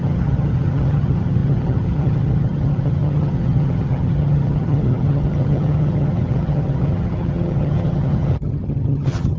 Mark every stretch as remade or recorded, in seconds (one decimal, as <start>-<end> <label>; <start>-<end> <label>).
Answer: 0.0-9.4 remade

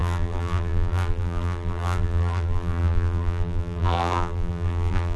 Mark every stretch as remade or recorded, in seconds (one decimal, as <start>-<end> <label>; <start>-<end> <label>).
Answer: 0.0-5.2 remade

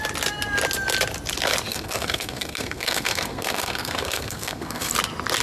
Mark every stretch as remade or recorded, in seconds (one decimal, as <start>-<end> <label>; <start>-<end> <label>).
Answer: 0.0-1.7 recorded; 1.7-4.9 remade; 4.9-5.4 recorded